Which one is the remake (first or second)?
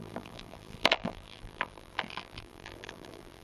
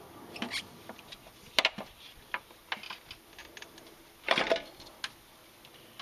first